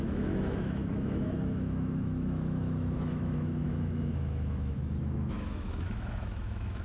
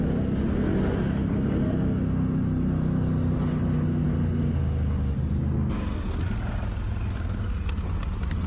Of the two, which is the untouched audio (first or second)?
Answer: second